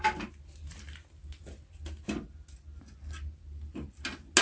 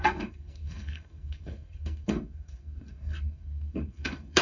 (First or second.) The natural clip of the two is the first